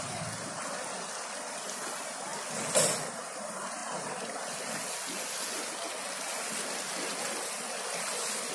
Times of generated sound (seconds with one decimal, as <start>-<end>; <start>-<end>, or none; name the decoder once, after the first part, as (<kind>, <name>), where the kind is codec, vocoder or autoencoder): none